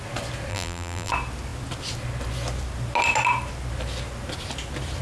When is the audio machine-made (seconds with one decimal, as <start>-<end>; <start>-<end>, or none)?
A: 0.5-1.1